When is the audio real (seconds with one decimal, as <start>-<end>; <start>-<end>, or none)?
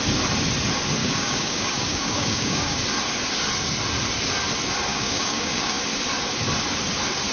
0.0-1.0; 2.8-4.9; 5.8-7.3